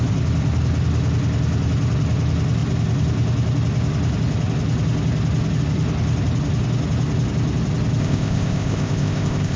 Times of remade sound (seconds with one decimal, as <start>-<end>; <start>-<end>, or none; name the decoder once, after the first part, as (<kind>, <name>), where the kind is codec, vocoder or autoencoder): 8.0-9.6 (codec, ZipCodec)